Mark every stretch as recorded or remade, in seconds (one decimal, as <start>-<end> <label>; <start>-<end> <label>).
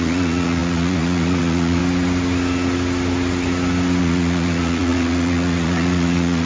0.0-1.8 remade; 1.8-4.0 recorded; 4.0-6.5 remade